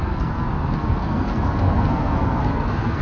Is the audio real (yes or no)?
no